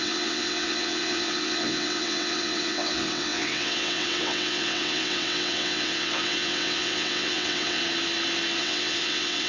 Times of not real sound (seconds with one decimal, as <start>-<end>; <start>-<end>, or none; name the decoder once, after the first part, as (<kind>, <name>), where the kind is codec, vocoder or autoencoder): 0.0-7.8 (vocoder, WaveNeXt); 8.6-9.5